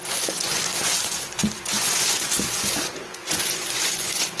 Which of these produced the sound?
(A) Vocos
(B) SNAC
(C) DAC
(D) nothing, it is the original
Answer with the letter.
A